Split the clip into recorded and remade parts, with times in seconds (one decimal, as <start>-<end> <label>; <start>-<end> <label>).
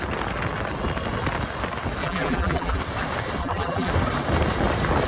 0.0-2.0 recorded; 2.0-2.8 remade; 2.8-3.4 recorded; 3.4-3.9 remade; 3.9-5.1 recorded